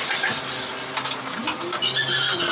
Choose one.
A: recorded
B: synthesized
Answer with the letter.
A